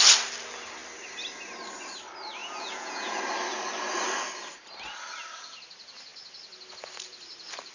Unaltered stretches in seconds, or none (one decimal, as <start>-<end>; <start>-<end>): 0.0-2.4; 3.2-7.7